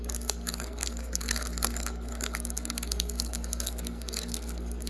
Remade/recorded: remade